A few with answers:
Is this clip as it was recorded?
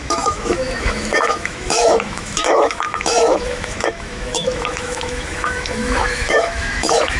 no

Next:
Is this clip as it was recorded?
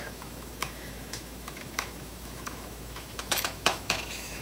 no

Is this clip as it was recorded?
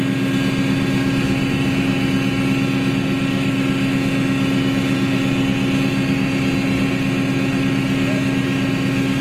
yes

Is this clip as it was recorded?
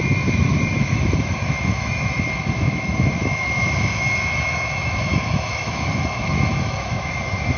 no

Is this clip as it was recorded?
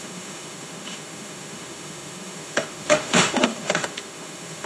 no